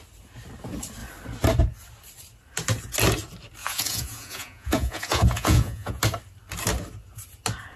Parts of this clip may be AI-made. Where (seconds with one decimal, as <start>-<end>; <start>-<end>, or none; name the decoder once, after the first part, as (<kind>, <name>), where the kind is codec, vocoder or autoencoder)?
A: 3.6-6.0 (vocoder, Vocos)

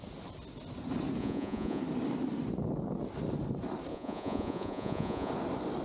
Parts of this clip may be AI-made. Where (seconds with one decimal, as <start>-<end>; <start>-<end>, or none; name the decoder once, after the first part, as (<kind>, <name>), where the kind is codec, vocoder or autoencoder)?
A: 1.2-1.8 (vocoder, Vocos); 3.9-5.3

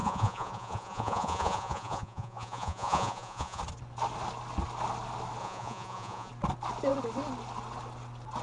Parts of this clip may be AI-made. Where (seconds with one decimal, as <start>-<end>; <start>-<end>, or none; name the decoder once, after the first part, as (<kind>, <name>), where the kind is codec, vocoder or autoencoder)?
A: 0.0-3.6 (vocoder, Vocos); 5.4-6.3